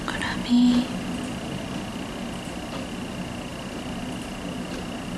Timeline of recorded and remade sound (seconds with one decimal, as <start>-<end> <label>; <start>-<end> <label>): 0.0-5.2 recorded